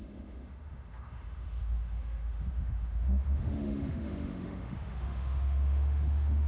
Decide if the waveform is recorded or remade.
remade